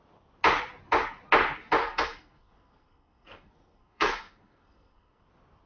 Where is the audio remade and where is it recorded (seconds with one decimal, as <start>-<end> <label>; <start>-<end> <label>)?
0.0-1.8 recorded; 1.8-5.2 remade; 5.2-5.7 recorded

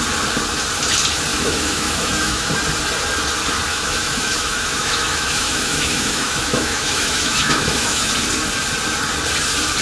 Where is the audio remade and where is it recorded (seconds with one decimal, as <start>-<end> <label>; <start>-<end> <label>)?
0.0-1.3 recorded; 1.3-2.5 remade; 2.5-3.7 recorded; 3.7-8.1 remade; 8.1-9.8 recorded

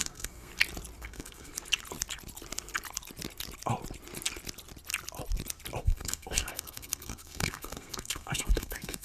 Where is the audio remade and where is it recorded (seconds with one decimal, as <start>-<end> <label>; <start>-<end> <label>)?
0.0-0.5 remade; 0.5-1.0 recorded; 1.0-1.5 remade; 1.5-5.8 recorded; 5.8-9.0 remade

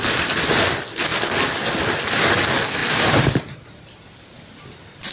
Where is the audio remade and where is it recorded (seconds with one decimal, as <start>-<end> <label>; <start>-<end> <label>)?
0.0-2.8 recorded; 2.8-4.4 remade; 4.4-5.1 recorded

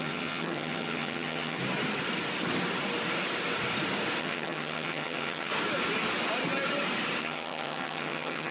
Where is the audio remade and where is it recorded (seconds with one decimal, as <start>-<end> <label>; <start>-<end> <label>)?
0.0-1.6 remade; 1.6-4.2 recorded; 4.2-5.5 remade; 5.5-7.2 recorded; 7.2-8.5 remade

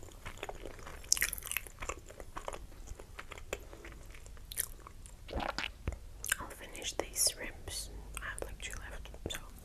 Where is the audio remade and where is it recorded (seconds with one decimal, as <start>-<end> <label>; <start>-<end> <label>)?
0.0-0.9 recorded; 0.9-3.2 remade; 3.2-9.6 recorded

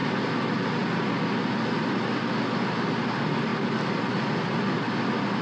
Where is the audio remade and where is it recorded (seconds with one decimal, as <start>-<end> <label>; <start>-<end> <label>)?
0.0-5.4 recorded